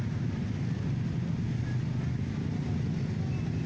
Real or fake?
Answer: real